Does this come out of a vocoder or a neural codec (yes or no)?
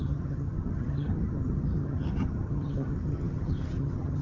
yes